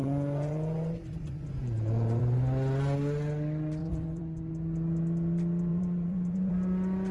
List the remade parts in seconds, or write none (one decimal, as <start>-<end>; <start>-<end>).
0.0-2.2; 3.8-4.5; 5.7-6.5